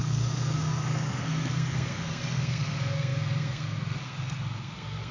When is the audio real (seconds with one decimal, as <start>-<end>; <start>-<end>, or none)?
none